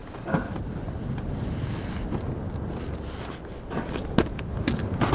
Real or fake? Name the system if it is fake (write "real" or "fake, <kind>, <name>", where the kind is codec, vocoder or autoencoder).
real